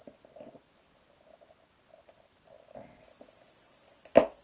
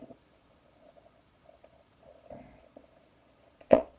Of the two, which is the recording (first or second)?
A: first